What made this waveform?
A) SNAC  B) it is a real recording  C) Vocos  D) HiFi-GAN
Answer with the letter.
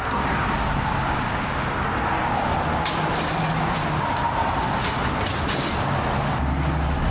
B